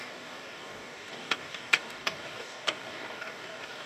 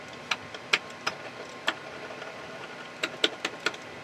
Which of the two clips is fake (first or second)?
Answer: first